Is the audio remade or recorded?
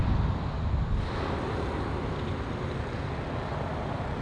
recorded